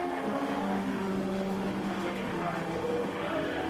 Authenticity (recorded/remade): remade